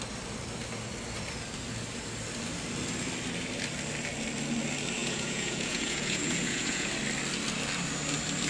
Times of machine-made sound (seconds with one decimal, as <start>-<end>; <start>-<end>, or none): 5.0-6.9